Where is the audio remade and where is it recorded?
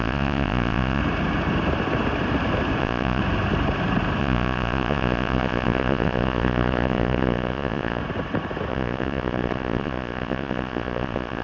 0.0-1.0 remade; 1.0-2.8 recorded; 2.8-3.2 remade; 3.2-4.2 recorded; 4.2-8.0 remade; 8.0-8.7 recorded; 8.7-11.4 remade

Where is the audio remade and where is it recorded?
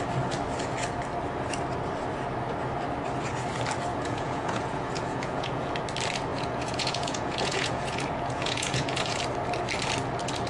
0.0-3.9 recorded; 3.9-5.7 remade; 5.7-6.3 recorded; 6.3-9.2 remade; 9.2-10.5 recorded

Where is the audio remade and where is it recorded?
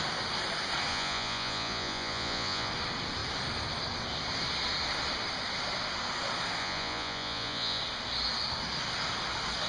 0.0-0.9 recorded; 0.9-2.7 remade; 2.7-6.6 recorded; 6.6-7.8 remade; 7.8-9.7 recorded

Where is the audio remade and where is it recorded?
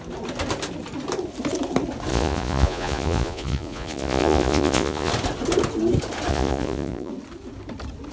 0.0-2.1 recorded; 2.1-5.1 remade; 5.1-6.3 recorded; 6.3-7.1 remade; 7.1-8.1 recorded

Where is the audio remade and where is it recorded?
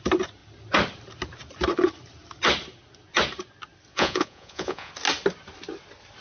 0.0-3.9 recorded; 3.9-4.9 remade; 4.9-6.2 recorded